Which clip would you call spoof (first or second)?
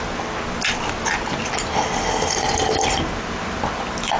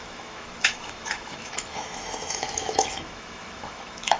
second